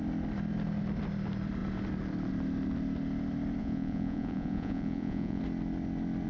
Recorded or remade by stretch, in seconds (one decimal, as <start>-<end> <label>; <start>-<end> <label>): 0.0-3.6 recorded; 3.6-5.4 remade; 5.4-6.3 recorded